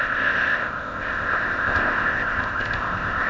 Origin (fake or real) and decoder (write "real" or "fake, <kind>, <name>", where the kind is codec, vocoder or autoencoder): fake, codec, ZipCodec